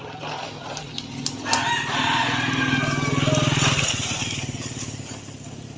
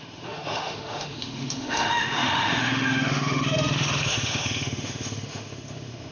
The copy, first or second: second